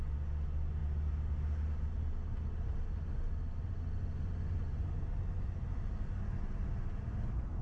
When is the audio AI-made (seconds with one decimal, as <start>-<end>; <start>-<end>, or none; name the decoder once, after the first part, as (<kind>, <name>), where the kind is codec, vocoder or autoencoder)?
none